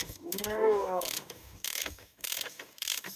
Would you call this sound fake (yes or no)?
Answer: yes